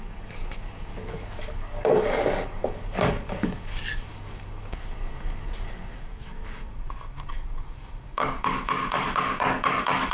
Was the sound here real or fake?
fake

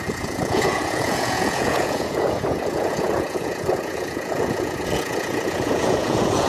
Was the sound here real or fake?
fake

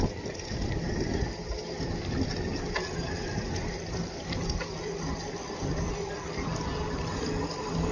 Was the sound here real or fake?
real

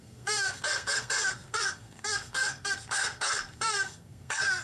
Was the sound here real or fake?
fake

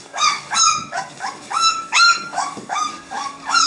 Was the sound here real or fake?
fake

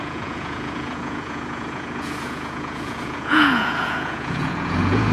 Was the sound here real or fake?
fake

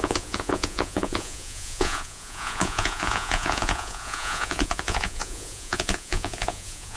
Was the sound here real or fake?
fake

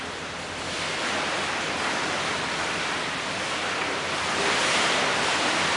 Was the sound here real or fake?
real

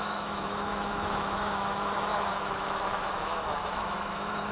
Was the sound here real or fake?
fake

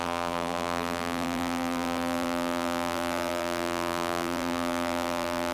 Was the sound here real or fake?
fake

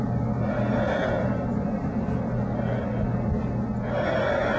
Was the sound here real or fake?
real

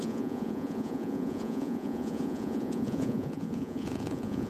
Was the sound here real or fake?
fake